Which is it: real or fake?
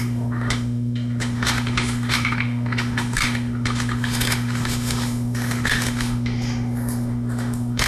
fake